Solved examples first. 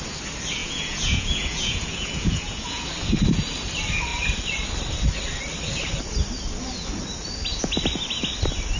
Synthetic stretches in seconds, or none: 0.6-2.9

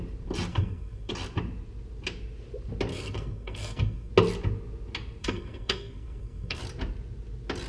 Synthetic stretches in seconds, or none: 0.5-1.1; 2.9-4.1; 5.2-6.6

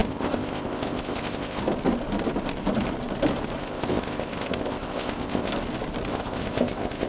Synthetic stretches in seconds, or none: 0.0-1.6; 3.6-5.5; 6.1-7.1

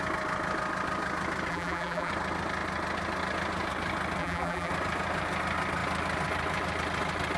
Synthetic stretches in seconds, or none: 1.5-2.1; 4.2-4.7

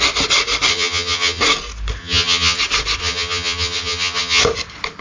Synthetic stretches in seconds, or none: 0.7-1.4; 2.0-2.6; 3.0-4.4